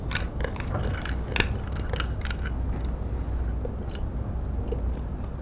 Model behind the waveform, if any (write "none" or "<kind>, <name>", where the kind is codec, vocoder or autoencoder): none